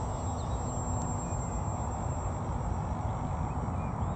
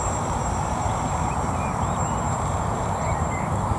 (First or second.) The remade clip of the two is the second